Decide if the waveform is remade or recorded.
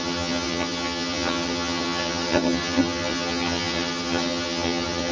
remade